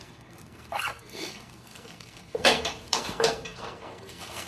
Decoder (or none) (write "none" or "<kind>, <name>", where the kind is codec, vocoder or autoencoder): codec, SNAC